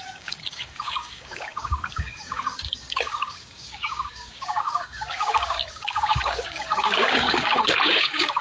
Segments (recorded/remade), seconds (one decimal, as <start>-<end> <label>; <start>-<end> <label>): 0.0-8.4 remade